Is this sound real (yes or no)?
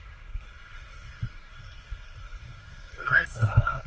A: no